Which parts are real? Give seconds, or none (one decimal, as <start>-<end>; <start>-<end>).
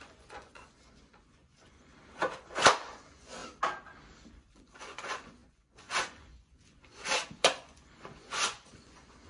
1.9-2.4; 3.4-4.3